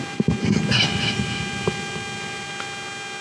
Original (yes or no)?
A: yes